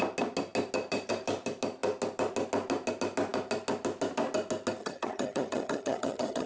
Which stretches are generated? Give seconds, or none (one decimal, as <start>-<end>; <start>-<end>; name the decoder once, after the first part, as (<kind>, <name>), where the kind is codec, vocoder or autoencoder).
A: 4.8-6.5 (vocoder, HiFi-GAN)